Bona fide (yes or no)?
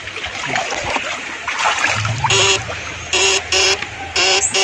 yes